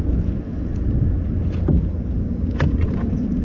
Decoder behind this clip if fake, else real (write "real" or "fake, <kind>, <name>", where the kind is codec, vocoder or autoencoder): real